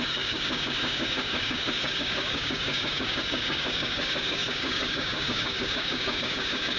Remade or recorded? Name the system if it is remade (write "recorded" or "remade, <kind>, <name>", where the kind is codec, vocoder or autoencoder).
remade, codec, DAC